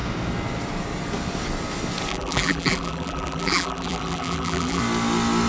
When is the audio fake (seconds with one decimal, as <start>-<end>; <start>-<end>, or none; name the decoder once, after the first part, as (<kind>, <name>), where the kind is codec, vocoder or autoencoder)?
2.1-4.8 (vocoder, BigVGAN v2)